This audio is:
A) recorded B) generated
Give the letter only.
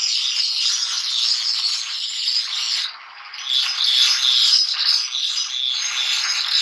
A